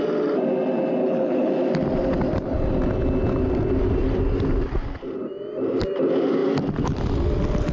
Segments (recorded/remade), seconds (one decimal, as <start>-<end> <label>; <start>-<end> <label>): 0.0-1.0 recorded; 1.0-1.5 remade; 1.5-7.7 recorded